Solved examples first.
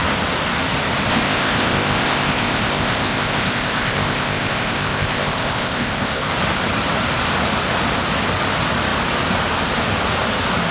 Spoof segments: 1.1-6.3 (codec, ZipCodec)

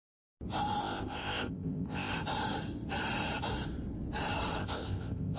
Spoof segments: 0.8-2.1 (codec, ZipCodec); 4.6-5.4

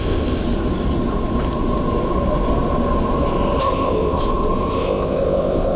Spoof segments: 0.0-0.4 (codec, ZipCodec); 3.6-4.2; 4.7-5.8

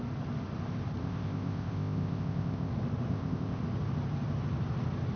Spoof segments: 1.0-2.7 (codec, ZipCodec); 3.1-3.6

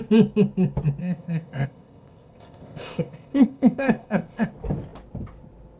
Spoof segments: 1.0-4.5 (codec, ZipCodec)

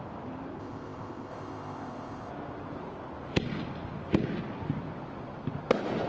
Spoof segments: 0.6-2.3 (codec, ZipCodec)

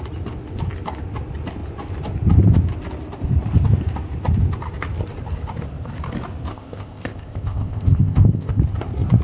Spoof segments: 6.5-8.6 (codec, ZipCodec)